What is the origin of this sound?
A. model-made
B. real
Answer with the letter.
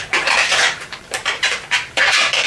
A